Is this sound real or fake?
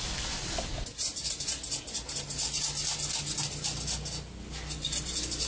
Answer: real